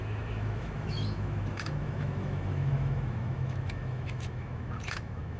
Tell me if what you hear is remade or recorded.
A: remade